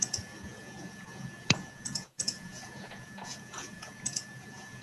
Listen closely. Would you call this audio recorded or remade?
remade